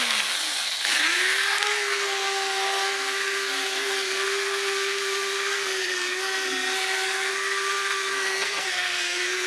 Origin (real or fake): fake